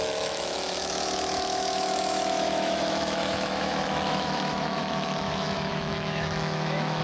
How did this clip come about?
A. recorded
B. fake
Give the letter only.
B